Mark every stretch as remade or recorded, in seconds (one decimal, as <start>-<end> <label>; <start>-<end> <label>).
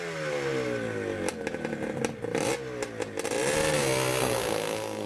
0.0-4.2 recorded; 4.2-5.1 remade